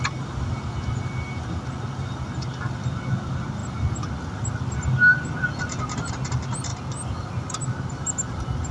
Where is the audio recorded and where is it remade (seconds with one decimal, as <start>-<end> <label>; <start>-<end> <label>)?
0.0-8.7 recorded